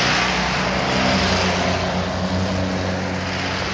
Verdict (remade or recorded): recorded